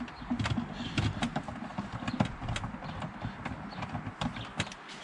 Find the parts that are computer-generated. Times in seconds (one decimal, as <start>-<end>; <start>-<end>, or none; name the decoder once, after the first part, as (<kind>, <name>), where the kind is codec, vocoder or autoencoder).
none